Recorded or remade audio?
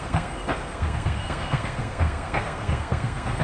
remade